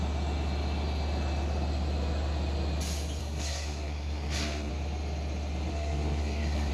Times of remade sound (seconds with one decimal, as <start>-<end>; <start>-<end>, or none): 3.2-4.7; 5.7-6.7